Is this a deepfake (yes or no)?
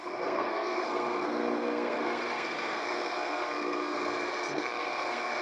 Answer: yes